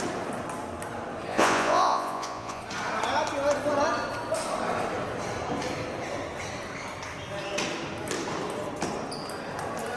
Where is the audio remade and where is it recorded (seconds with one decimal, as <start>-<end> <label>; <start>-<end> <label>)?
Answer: 0.0-1.3 recorded; 1.3-2.6 remade; 2.6-10.0 recorded